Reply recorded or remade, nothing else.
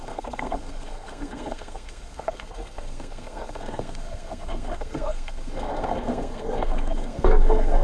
remade